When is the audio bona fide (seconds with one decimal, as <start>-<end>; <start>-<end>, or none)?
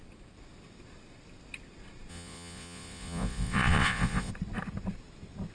0.0-2.1; 4.3-5.5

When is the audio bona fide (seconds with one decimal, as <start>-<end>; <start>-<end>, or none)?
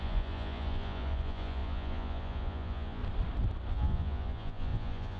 3.0-3.7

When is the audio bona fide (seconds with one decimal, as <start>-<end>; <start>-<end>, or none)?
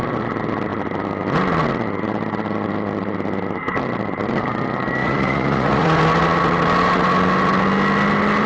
0.0-5.0; 6.0-8.5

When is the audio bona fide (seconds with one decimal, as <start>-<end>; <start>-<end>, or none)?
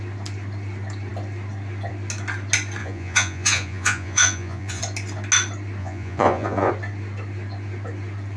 0.0-2.8; 4.8-5.8; 6.7-8.4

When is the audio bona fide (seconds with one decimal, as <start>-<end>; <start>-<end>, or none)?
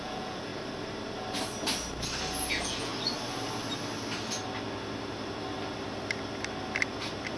0.5-2.4; 2.9-7.4